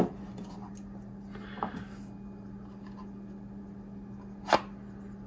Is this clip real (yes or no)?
yes